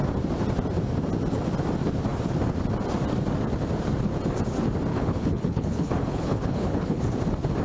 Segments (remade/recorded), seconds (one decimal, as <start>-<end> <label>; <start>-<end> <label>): 0.0-4.9 recorded; 4.9-7.0 remade; 7.0-7.6 recorded